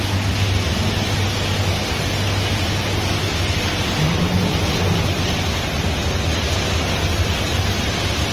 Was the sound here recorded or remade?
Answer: recorded